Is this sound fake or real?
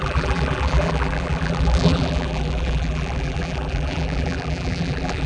fake